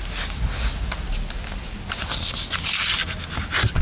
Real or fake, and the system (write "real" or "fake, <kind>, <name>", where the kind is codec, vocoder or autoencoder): real